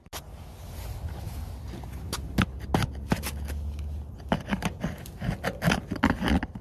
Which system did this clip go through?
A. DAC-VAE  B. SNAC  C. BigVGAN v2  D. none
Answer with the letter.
D